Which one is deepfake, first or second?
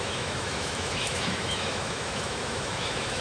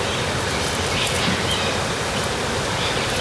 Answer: first